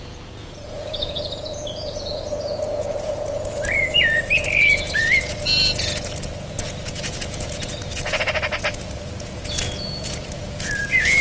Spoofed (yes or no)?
yes